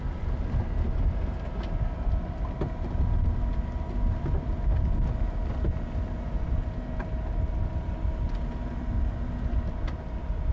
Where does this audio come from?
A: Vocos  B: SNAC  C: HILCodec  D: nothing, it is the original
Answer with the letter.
D